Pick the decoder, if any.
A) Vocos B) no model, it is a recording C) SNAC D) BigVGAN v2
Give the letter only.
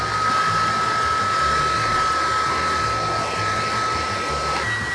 B